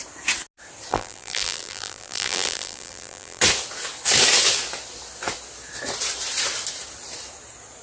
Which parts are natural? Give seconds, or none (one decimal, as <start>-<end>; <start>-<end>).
0.0-0.9; 3.4-7.8